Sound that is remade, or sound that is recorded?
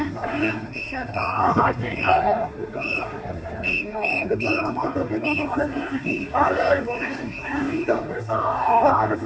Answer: remade